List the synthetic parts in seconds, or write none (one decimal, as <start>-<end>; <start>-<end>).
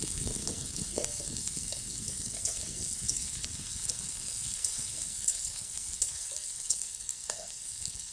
0.0-8.1